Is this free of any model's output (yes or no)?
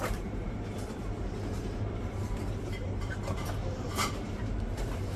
no